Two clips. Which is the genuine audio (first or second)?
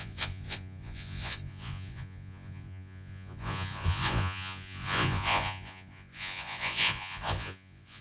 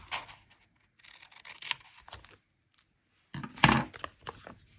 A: second